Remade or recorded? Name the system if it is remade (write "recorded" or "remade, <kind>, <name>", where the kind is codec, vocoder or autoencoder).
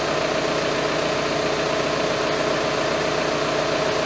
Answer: recorded